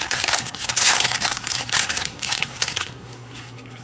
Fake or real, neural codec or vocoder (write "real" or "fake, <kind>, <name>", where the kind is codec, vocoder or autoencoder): fake, codec, SNAC